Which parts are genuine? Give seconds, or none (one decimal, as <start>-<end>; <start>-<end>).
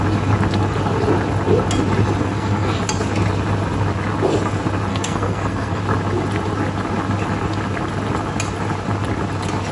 0.0-2.2; 2.8-4.9; 5.8-9.7